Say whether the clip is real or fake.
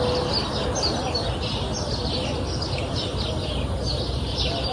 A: real